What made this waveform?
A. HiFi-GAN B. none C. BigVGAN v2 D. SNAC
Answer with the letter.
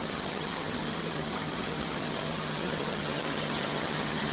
A